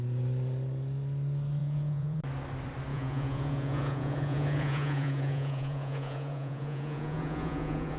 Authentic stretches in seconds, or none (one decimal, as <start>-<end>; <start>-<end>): 0.0-1.6; 2.2-2.9